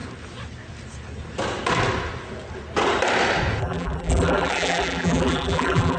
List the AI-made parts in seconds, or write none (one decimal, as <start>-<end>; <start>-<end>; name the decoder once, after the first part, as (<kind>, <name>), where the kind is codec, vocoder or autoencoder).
3.6-6.0 (vocoder, BigVGAN v2)